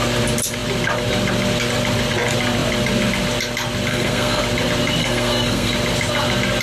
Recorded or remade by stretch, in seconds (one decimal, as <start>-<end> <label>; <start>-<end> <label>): 0.0-3.9 recorded; 3.9-4.4 remade; 4.4-5.0 recorded; 5.0-5.7 remade; 5.7-6.6 recorded